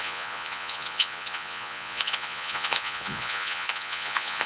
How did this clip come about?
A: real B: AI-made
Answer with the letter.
B